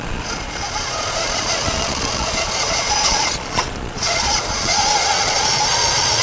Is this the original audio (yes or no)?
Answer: no